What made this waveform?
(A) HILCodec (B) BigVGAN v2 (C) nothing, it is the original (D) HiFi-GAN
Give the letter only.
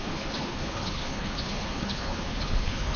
A